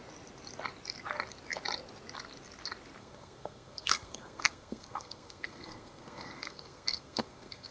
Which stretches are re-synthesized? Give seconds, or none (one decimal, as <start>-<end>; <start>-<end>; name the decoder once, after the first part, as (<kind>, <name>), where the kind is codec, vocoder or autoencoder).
3.0-7.7 (codec, SNAC)